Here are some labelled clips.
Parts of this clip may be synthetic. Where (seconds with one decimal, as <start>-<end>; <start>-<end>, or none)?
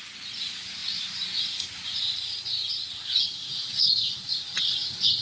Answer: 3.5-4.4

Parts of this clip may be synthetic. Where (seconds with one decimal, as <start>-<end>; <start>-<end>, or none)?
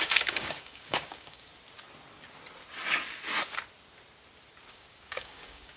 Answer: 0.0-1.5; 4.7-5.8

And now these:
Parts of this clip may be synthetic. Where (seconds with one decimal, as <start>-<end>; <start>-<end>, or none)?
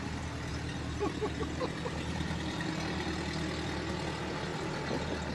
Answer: 0.5-2.7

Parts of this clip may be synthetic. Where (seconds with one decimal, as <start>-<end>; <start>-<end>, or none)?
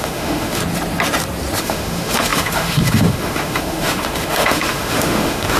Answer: 0.0-0.6; 1.6-5.6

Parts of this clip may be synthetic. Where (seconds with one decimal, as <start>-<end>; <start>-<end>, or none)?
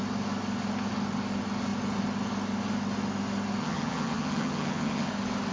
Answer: 3.6-5.1